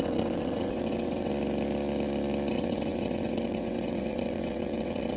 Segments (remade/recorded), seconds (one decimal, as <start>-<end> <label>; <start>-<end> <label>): 0.0-1.3 remade; 1.3-2.5 recorded; 2.5-5.2 remade

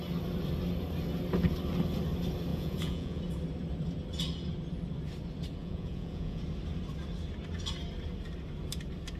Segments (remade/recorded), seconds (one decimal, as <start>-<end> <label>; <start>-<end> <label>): 0.0-2.5 recorded; 2.5-3.2 remade; 3.2-5.6 recorded; 5.6-6.4 remade; 6.4-9.2 recorded

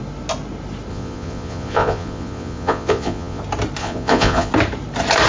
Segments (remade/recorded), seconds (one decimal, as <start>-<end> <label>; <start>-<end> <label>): 0.0-0.9 recorded; 0.9-3.4 remade; 3.4-3.8 recorded; 3.8-4.5 remade; 4.5-5.3 recorded

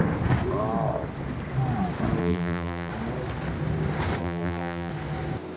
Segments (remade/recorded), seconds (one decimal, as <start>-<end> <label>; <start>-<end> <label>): 0.0-2.2 recorded; 2.2-2.9 remade; 2.9-4.2 recorded; 4.2-4.9 remade; 4.9-5.6 recorded

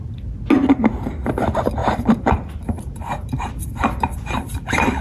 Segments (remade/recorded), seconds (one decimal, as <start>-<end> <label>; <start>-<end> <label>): 0.0-1.8 recorded; 1.8-5.0 remade

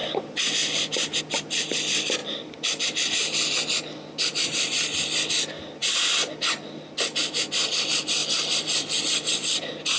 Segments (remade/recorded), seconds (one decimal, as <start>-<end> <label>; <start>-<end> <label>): 0.0-10.0 recorded